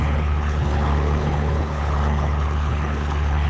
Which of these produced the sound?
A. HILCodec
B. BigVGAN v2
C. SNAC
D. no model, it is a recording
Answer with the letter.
A